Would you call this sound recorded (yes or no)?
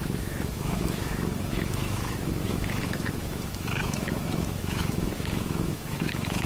no